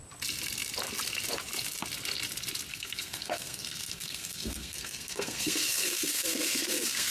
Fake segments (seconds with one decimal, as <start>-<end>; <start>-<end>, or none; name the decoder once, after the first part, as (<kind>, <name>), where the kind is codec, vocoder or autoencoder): 2.7-7.1 (codec, SNAC)